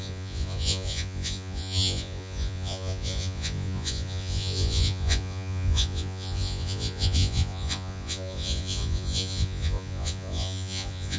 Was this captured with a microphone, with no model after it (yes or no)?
no